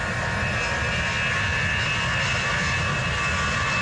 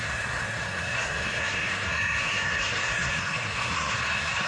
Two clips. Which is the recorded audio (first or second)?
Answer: first